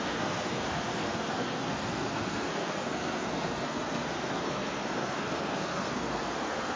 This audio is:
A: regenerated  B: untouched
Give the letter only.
A